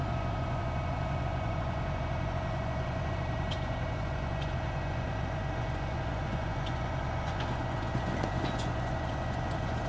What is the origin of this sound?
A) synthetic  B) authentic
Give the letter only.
A